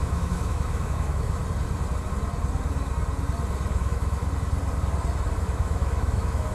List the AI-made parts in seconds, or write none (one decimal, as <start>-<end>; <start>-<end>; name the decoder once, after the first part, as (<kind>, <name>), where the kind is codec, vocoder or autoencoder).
0.0-1.4 (autoencoder, DAC-VAE); 3.7-4.2; 5.4-6.5